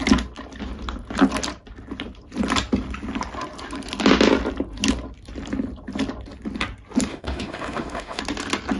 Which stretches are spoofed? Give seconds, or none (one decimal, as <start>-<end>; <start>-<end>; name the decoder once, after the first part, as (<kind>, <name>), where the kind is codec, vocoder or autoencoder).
7.1-8.2 (autoencoder, DAC-VAE)